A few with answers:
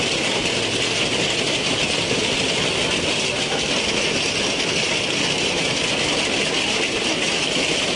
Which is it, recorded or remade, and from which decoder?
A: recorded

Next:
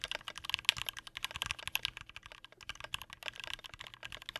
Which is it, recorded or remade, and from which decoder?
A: recorded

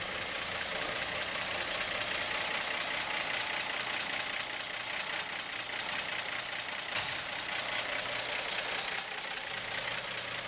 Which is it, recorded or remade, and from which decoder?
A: recorded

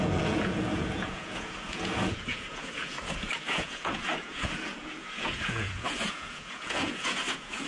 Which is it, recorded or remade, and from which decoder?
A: remade, vocoder, Vocos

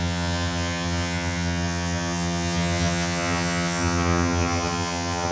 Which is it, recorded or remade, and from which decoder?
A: remade, vocoder, HiFi-GAN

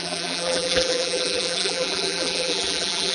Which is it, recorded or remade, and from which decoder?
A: remade, vocoder, BigVGAN v2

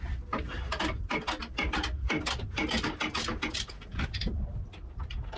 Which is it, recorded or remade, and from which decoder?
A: recorded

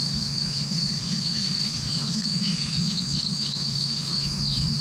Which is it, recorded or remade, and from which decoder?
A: remade, autoencoder, DAC-VAE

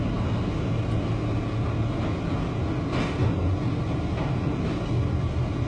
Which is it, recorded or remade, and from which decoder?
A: recorded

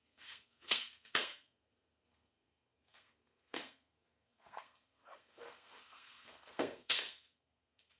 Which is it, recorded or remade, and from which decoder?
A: remade, codec, SNAC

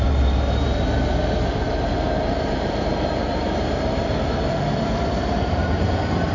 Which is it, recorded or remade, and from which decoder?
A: remade, vocoder, BigVGAN v2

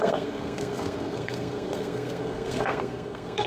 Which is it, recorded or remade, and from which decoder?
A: remade, codec, SNAC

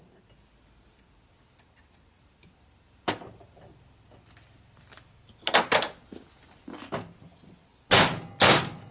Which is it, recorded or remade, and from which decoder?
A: recorded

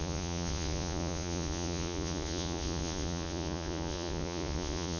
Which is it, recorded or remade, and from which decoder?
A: remade, vocoder, Vocos